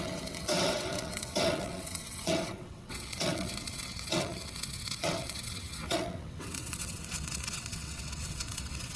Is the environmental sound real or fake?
fake